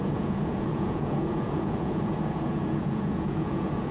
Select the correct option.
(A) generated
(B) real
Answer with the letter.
A